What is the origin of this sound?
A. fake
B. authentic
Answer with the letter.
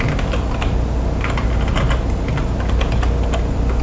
B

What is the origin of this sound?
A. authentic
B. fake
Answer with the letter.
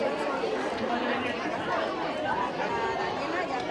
A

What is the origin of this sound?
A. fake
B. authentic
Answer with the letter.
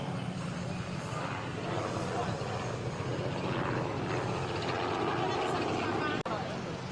B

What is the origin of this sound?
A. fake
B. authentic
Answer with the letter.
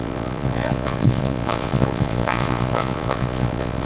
A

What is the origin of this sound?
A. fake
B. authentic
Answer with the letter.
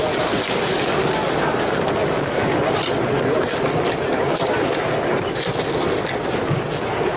B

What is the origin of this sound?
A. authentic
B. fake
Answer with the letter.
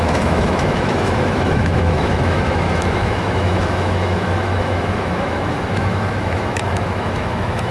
B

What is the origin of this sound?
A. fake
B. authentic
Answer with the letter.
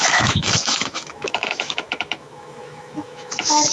A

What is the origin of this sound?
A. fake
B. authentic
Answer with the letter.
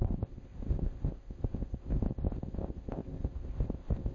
A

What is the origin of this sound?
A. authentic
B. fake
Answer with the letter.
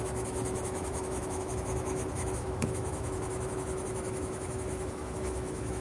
B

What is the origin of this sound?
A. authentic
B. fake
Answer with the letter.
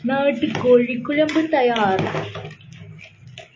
A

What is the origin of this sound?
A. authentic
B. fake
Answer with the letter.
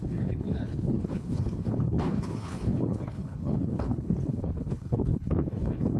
B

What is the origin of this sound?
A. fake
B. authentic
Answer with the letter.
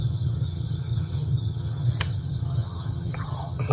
A